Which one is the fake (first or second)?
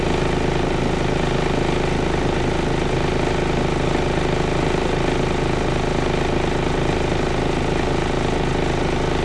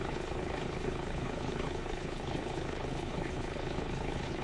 second